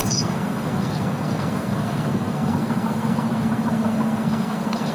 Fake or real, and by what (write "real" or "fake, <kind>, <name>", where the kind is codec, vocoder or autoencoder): fake, codec, SNAC